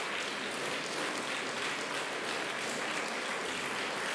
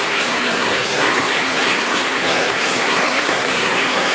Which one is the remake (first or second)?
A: second